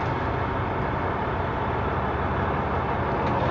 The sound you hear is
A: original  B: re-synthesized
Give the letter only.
A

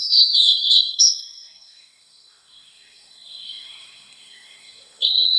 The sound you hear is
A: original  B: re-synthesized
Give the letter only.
B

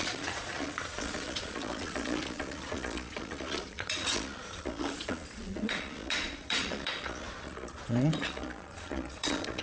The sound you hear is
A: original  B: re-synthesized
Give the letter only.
B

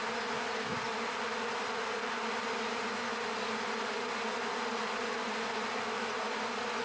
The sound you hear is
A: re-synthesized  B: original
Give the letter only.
B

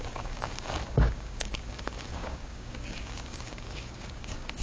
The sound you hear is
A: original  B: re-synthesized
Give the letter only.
B